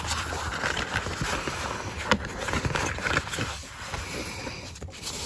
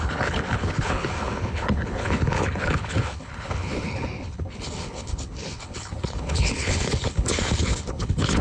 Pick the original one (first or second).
first